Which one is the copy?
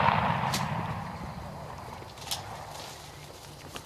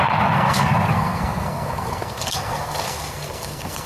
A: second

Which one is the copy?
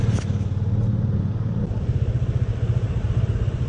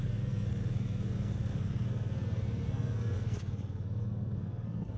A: second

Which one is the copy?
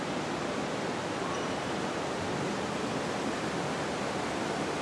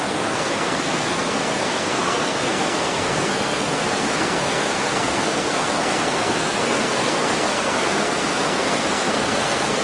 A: second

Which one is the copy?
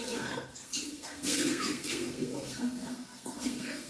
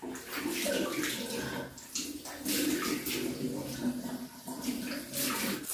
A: first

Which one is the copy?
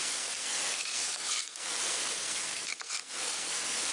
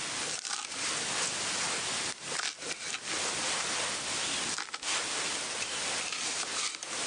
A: first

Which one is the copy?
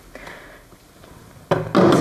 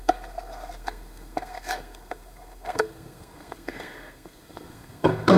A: second